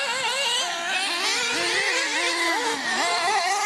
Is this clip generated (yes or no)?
no